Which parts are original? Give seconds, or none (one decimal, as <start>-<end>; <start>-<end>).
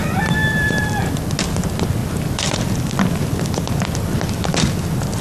1.2-2.0; 3.7-5.2